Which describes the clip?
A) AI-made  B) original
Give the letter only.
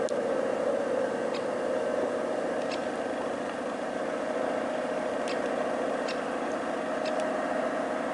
B